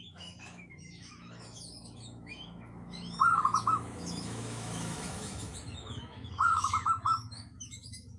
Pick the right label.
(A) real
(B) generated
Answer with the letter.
B